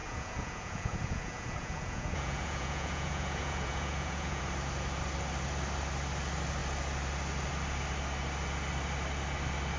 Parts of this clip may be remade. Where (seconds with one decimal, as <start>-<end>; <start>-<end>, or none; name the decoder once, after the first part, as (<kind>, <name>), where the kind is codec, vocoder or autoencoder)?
0.0-4.4 (vocoder, Vocos)